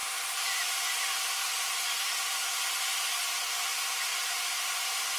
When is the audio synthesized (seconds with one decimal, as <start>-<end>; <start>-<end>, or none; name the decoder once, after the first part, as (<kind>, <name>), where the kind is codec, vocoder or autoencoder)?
0.0-3.0 (vocoder, BigVGAN v2); 4.1-4.7